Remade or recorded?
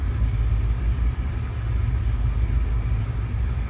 recorded